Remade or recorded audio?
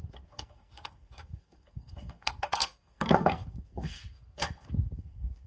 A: remade